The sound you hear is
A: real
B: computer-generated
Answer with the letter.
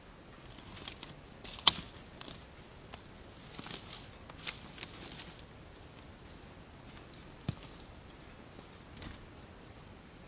A